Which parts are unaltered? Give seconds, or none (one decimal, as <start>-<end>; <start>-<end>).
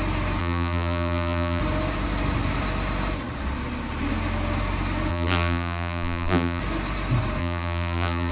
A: 0.0-0.4; 1.6-5.1; 6.6-7.4